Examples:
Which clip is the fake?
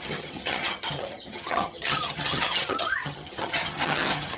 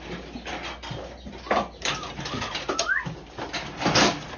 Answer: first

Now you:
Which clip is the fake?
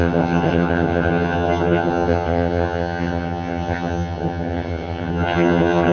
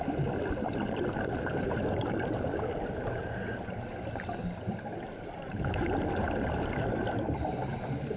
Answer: first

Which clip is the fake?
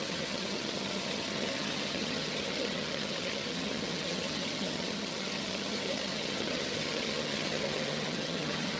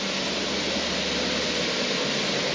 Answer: first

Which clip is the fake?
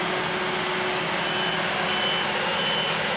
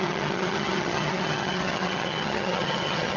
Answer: second